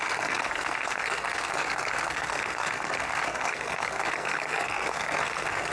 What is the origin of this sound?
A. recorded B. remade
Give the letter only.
B